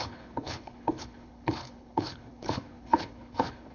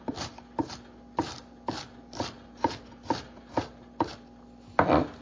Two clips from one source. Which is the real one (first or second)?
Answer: second